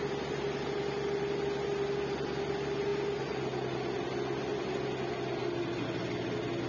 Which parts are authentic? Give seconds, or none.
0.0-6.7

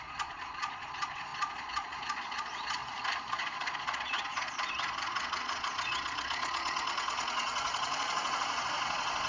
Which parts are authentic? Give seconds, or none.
2.8-3.3

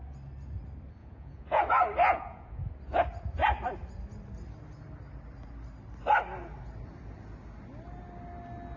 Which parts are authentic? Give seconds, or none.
0.0-1.0; 1.6-2.0; 2.7-8.8

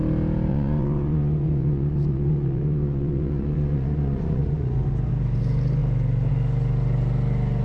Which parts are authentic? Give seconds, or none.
0.0-0.5; 5.1-7.6

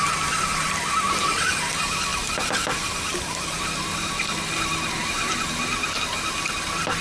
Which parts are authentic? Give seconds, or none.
0.0-7.0